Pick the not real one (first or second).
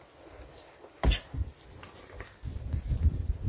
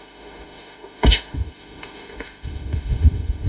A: second